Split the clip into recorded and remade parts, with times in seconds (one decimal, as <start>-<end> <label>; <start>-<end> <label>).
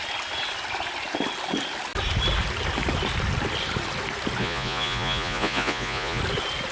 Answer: 0.0-4.4 recorded; 4.4-6.2 remade; 6.2-6.7 recorded